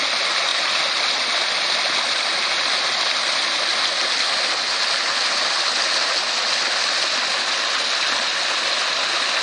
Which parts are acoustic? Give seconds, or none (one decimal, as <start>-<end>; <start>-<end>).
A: 0.0-9.4